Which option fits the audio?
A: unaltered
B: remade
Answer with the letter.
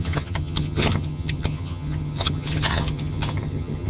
B